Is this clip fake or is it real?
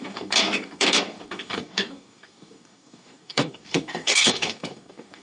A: fake